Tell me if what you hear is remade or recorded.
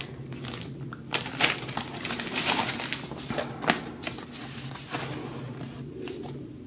recorded